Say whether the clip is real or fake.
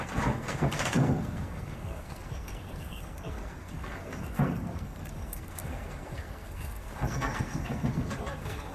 fake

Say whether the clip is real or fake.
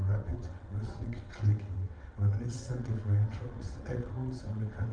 fake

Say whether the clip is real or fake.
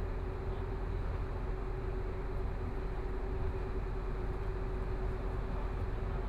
real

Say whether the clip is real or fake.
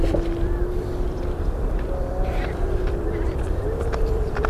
fake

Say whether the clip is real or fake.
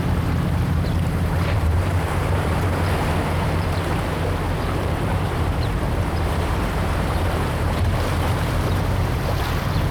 fake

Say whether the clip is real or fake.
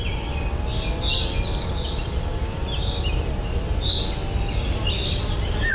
real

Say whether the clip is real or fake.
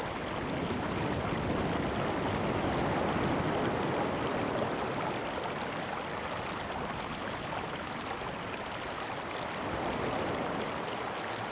real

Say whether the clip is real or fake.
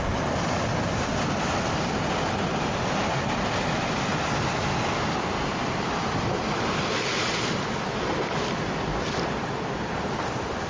real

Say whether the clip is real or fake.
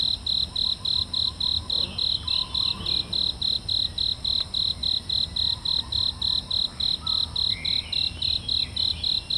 real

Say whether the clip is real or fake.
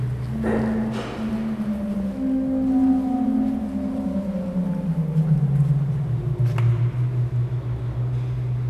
real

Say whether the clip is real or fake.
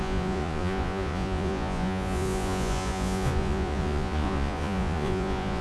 fake